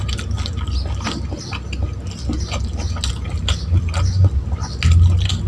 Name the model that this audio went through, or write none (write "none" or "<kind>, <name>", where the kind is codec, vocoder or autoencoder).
none